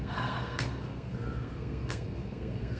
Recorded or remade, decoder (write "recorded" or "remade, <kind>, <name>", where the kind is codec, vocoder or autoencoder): remade, codec, SNAC